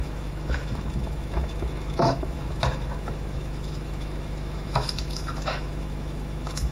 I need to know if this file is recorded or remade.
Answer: remade